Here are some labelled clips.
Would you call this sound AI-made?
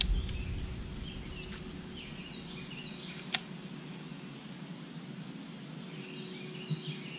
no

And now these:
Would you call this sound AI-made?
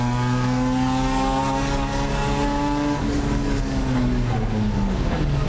yes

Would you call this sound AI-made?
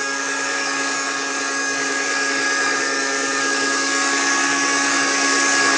yes